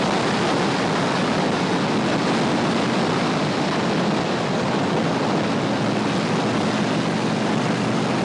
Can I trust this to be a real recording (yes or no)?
yes